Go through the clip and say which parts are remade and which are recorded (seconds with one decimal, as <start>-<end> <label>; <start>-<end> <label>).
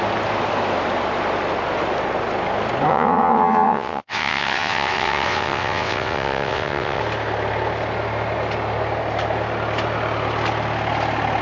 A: 0.0-2.9 recorded; 2.9-7.0 remade; 7.0-11.4 recorded